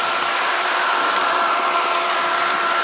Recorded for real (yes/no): no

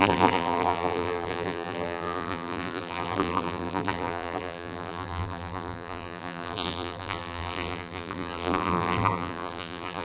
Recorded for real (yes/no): no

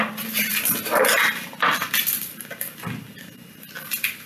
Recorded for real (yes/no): no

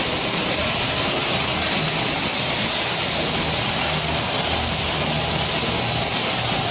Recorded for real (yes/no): yes